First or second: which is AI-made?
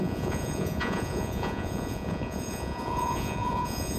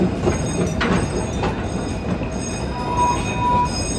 first